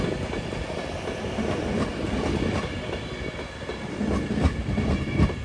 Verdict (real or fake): real